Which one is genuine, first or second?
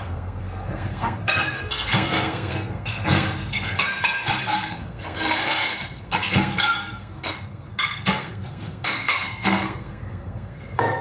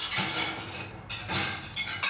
second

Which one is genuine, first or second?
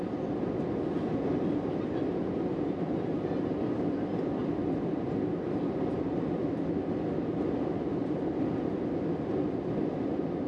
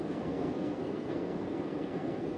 first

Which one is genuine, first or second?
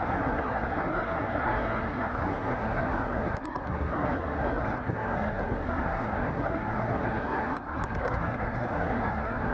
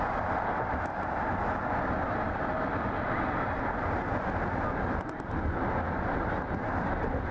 second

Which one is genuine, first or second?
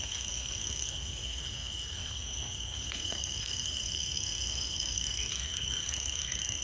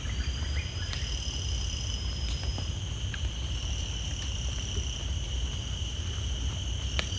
second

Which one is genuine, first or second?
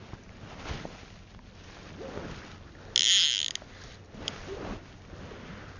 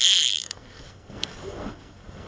first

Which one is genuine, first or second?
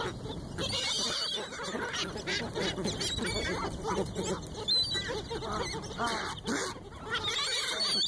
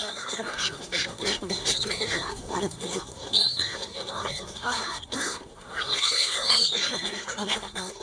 first